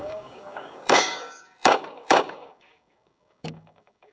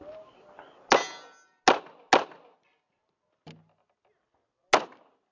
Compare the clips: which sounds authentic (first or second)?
second